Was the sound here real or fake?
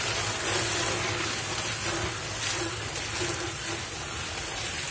real